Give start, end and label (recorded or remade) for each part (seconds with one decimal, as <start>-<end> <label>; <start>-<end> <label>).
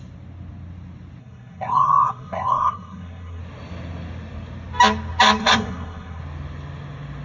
0.0-1.2 recorded; 1.2-3.4 remade; 3.4-5.4 recorded; 5.4-6.2 remade; 6.2-7.2 recorded